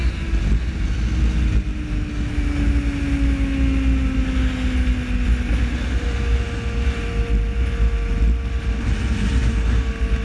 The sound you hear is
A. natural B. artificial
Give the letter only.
A